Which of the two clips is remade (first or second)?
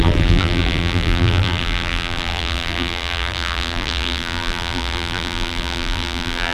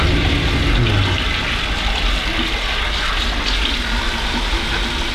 first